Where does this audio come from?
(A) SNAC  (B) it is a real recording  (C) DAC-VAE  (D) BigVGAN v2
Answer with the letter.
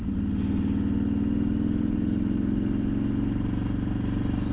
B